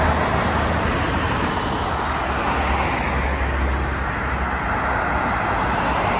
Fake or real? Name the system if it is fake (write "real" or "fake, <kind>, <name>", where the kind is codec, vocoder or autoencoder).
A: real